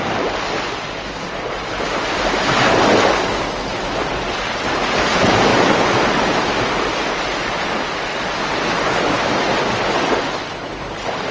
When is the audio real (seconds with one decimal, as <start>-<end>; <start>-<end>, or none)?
0.0-11.3